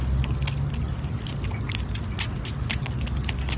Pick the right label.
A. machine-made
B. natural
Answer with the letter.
B